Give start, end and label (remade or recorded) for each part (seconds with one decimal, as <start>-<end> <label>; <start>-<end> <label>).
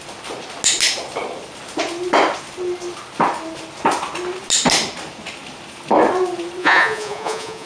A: 0.0-6.6 recorded; 6.6-7.7 remade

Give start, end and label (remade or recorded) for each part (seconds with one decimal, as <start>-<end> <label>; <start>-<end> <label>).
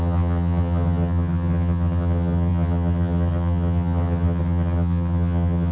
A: 0.0-5.7 remade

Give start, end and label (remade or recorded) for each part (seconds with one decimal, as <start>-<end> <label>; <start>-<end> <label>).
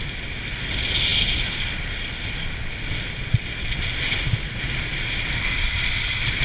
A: 0.0-6.4 recorded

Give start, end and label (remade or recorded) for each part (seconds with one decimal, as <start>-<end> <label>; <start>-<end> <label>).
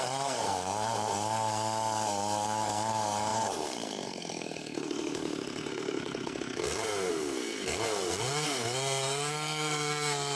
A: 0.0-10.4 remade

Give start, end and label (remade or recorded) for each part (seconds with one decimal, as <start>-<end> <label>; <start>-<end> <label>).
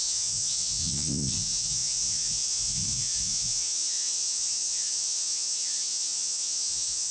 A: 0.0-7.1 remade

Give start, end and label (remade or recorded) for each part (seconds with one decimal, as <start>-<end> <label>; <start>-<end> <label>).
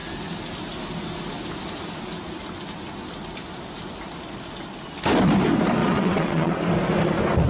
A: 0.0-5.8 recorded; 5.8-6.6 remade; 6.6-7.5 recorded